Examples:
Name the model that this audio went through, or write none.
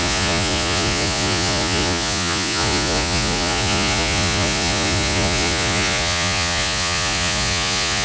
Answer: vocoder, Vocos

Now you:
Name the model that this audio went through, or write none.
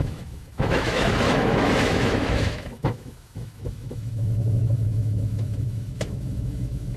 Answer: autoencoder, DAC-VAE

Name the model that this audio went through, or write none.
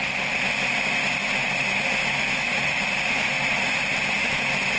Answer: none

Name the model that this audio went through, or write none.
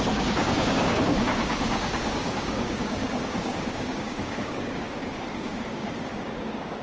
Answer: codec, DAC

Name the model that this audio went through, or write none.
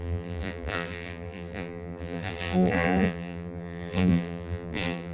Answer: vocoder, BigVGAN v2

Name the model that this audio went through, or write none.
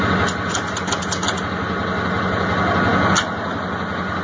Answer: none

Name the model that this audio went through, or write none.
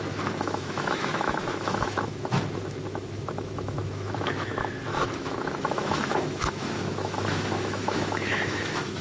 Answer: autoencoder, DAC-VAE